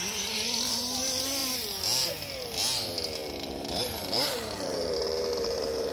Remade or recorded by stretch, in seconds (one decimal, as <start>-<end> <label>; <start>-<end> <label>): 0.0-3.2 recorded; 3.2-5.9 remade